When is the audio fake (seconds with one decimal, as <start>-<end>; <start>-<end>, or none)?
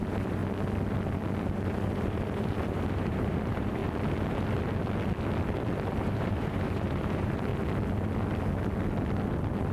0.0-0.4; 1.4-3.8; 6.0-7.5